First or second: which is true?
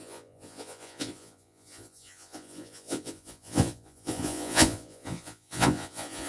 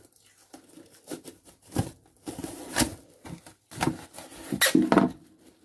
second